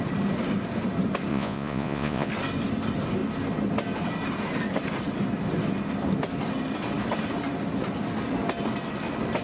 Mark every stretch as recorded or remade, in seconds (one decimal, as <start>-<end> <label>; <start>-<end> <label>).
0.0-1.3 recorded; 1.3-2.3 remade; 2.3-9.4 recorded